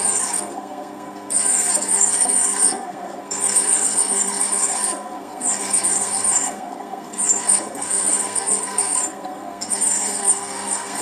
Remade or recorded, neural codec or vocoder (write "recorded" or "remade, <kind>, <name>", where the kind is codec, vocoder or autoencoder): remade, codec, SNAC